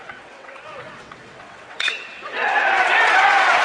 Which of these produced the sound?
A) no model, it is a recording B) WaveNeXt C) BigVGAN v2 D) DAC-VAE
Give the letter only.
B